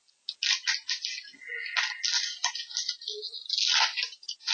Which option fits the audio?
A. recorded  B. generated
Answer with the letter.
A